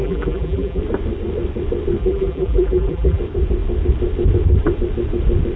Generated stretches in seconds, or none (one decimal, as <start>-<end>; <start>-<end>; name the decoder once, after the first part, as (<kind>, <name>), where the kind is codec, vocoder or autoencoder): 0.0-0.8 (vocoder, BigVGAN v2); 2.0-3.2

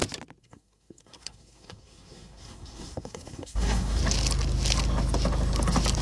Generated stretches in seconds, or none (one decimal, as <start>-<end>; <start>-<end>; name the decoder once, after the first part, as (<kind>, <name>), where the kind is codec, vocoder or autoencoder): 0.4-4.0 (codec, SNAC)